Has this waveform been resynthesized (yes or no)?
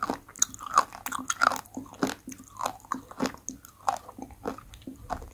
no